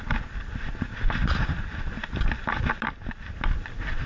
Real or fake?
real